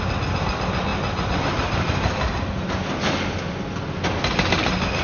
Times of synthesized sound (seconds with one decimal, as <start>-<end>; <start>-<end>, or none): none